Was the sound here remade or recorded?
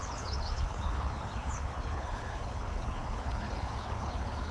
remade